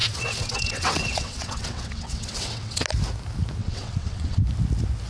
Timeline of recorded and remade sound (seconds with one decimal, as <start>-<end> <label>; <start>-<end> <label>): 0.0-2.8 remade; 2.8-3.6 recorded; 3.6-4.4 remade; 4.4-5.1 recorded